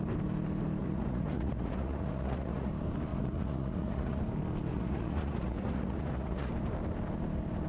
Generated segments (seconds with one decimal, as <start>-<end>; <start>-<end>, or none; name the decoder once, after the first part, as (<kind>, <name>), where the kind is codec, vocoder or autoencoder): 0.8-2.7 (vocoder, Vocos); 3.1-4.2; 4.7-6.5